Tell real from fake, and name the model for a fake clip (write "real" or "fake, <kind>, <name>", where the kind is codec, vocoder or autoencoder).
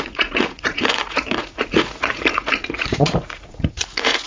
fake, vocoder, Vocos